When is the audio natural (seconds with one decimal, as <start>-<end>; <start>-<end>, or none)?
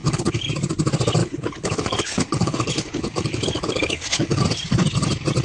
0.5-1.2; 4.4-5.4